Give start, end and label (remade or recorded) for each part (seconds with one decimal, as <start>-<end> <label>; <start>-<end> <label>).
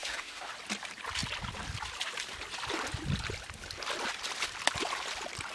0.0-0.5 remade; 0.5-5.5 recorded